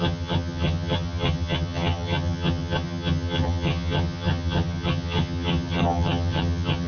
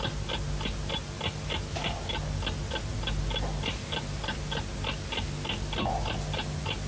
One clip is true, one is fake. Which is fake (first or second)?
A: first